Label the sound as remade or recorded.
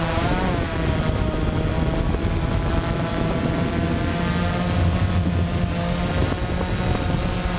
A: recorded